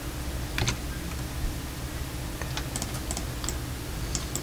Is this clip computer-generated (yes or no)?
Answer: no